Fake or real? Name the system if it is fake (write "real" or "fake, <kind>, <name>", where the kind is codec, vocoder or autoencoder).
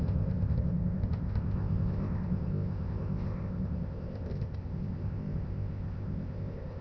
fake, codec, ZipCodec